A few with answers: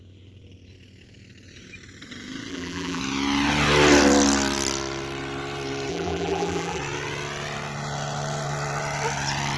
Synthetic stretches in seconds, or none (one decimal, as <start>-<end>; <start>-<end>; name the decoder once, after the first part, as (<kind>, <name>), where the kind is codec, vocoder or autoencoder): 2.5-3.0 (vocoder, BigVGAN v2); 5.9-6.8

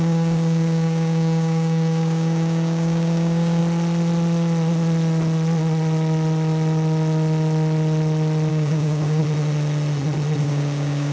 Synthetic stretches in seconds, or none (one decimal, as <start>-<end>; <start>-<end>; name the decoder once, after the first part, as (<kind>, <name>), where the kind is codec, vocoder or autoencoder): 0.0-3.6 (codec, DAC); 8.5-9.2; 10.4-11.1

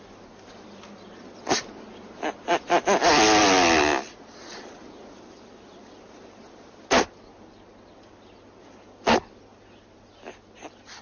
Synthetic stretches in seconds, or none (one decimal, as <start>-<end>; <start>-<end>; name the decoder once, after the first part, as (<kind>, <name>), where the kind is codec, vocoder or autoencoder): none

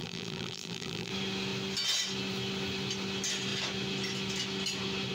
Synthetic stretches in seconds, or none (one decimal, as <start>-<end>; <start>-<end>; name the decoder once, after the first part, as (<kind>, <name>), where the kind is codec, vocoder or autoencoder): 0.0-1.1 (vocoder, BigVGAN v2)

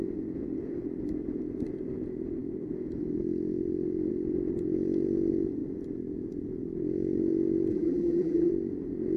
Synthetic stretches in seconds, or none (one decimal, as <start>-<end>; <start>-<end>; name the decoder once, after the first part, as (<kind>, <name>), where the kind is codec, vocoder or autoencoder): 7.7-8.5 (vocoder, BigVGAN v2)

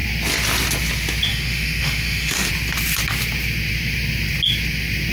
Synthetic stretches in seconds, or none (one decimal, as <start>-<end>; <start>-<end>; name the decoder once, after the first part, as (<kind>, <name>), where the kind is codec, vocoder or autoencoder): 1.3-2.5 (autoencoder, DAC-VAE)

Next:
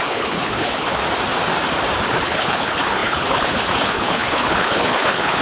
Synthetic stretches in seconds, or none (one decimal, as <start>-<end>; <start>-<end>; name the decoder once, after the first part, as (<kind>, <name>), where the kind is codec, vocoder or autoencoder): 0.0-1.0 (codec, HILCodec); 2.1-5.4